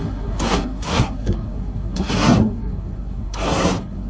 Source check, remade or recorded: remade